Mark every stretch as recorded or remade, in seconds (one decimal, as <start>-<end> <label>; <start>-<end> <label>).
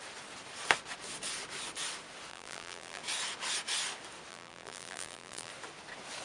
0.0-2.3 recorded; 2.3-3.0 remade; 3.0-4.3 recorded; 4.3-5.5 remade; 5.5-6.2 recorded